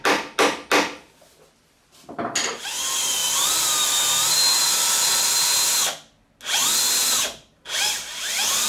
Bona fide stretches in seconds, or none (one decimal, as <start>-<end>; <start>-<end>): 0.0-8.7